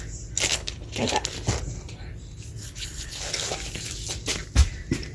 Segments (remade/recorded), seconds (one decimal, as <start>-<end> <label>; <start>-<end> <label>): 0.0-0.5 recorded; 0.5-1.1 remade; 1.1-2.6 recorded; 2.6-3.2 remade; 3.2-5.1 recorded